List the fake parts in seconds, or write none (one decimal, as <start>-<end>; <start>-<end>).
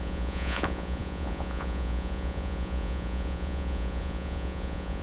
0.0-5.0